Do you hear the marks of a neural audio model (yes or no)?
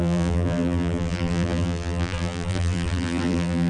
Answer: yes